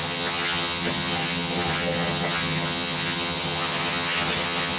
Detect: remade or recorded remade